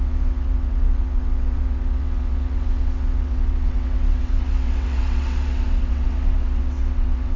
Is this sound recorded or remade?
remade